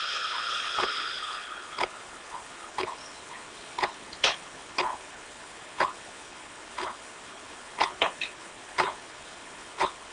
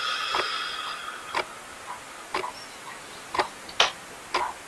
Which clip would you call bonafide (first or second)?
second